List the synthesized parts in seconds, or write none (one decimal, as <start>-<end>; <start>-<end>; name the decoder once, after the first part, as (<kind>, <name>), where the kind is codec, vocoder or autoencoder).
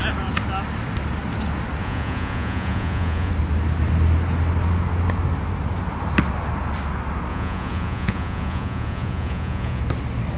1.8-3.3 (vocoder, Vocos); 7.3-9.8